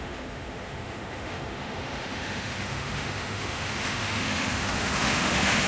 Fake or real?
fake